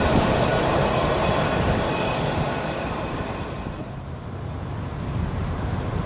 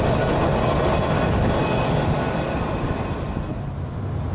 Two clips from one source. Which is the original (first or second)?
second